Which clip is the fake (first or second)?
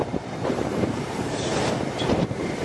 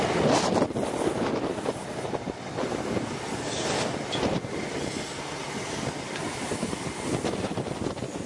first